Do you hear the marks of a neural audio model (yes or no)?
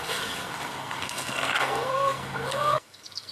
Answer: yes